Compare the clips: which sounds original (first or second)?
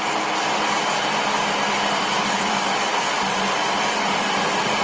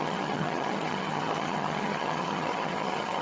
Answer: first